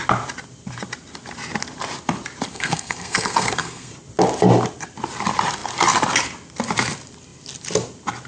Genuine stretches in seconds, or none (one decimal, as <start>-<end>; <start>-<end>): 0.0-2.5; 3.9-8.3